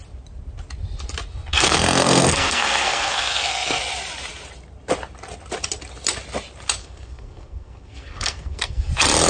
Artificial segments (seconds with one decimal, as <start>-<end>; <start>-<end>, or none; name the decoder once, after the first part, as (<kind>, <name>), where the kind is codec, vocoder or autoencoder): 1.5-3.8 (codec, SNAC); 6.8-8.9